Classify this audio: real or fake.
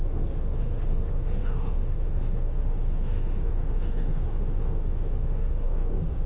fake